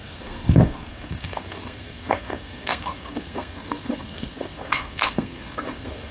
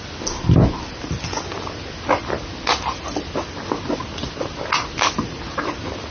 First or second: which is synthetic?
first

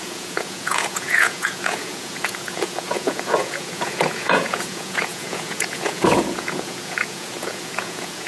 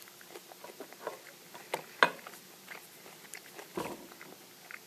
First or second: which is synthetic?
first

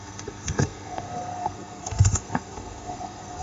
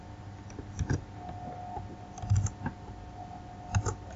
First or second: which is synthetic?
first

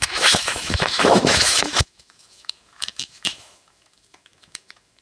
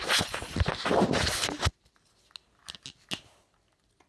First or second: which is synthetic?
first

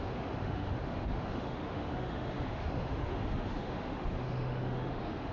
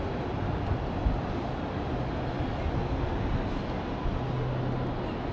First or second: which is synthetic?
first